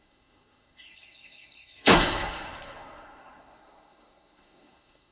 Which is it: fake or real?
fake